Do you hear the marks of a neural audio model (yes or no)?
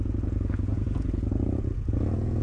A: yes